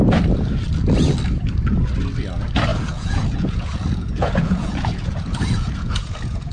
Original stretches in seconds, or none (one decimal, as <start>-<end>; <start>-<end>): 0.0-2.7

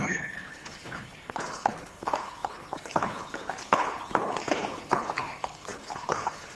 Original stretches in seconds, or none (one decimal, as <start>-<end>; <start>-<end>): none

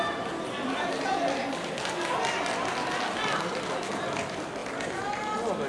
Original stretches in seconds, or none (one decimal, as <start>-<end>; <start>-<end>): 0.0-5.7

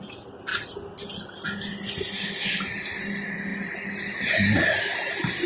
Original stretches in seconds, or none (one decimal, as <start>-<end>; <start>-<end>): 0.0-5.5

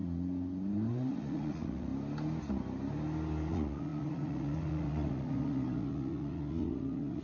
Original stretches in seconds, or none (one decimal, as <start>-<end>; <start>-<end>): 0.0-0.9; 1.9-3.5

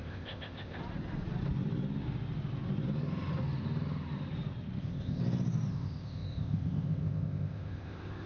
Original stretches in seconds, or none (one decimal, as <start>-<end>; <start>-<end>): 0.8-4.8; 5.2-5.7